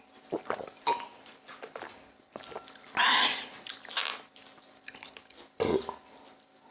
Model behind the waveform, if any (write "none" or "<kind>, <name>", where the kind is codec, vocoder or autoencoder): none